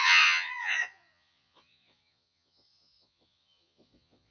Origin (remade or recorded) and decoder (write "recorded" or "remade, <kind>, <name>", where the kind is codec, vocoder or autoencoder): remade, vocoder, Vocos